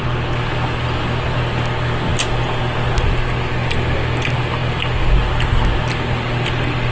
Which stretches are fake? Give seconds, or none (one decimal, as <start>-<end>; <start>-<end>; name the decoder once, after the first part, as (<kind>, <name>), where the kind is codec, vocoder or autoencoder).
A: none